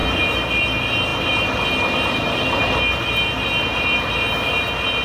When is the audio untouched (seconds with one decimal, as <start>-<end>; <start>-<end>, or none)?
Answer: 0.0-5.0